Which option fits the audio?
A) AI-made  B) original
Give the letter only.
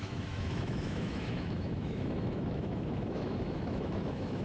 A